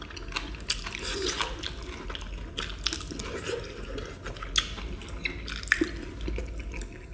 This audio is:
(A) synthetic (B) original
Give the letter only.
B